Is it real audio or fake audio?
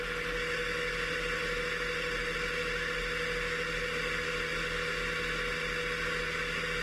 real